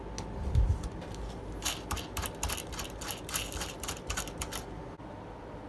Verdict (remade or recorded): recorded